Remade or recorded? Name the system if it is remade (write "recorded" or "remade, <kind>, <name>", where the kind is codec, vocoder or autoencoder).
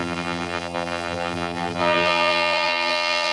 remade, vocoder, BigVGAN v2